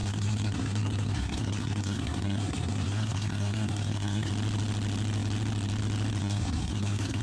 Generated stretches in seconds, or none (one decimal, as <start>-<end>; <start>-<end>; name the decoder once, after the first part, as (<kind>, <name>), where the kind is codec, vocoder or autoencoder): 0.0-4.3 (codec, SNAC); 6.2-7.2